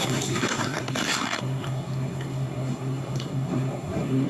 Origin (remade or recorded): remade